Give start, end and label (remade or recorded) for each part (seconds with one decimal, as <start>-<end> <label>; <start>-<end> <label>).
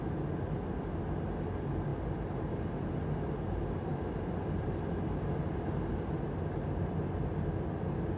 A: 0.0-8.2 recorded